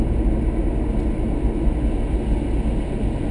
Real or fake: real